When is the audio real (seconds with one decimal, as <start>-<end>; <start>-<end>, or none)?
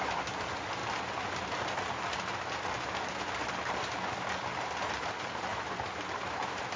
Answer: 0.8-4.9